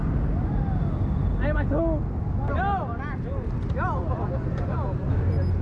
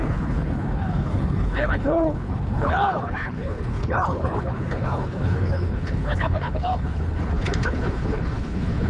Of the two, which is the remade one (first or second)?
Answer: second